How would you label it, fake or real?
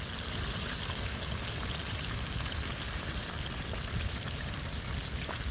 real